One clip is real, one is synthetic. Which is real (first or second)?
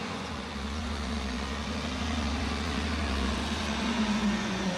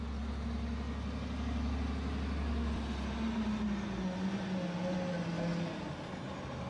second